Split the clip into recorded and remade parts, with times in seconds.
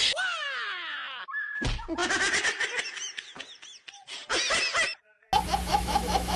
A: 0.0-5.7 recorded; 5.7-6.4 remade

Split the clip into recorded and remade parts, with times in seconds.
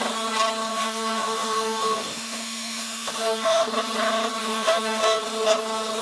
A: 0.0-0.7 recorded; 0.7-3.7 remade; 3.7-4.4 recorded; 4.4-5.2 remade; 5.2-6.0 recorded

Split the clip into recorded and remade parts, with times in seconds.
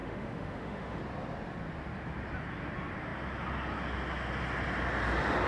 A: 0.0-1.0 remade; 1.0-5.5 recorded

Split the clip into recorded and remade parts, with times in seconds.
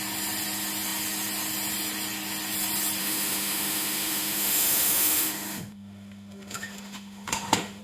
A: 0.0-3.0 recorded; 3.0-7.8 remade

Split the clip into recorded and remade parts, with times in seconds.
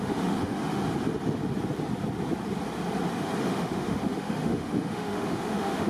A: 0.0-0.8 remade; 0.8-3.4 recorded; 3.4-5.9 remade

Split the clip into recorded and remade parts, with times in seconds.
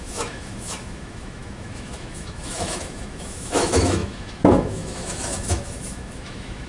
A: 0.0-6.7 remade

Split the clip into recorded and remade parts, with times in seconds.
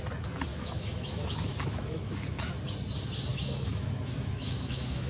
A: 0.0-0.5 recorded; 0.5-2.5 remade; 2.5-3.3 recorded; 3.3-5.1 remade